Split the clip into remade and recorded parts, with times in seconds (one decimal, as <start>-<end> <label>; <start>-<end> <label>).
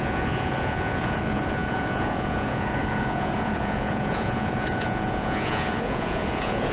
0.0-6.7 remade